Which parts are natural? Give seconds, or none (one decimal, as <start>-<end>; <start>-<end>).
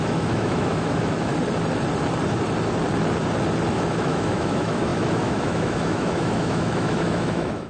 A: 1.3-3.7